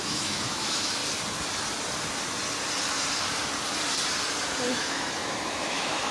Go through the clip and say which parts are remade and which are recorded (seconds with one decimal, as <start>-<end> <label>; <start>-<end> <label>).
0.0-1.0 remade; 1.0-4.7 recorded; 4.7-6.1 remade